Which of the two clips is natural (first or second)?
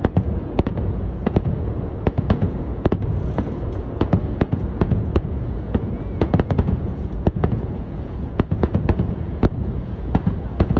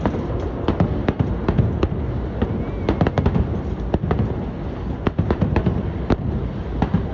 second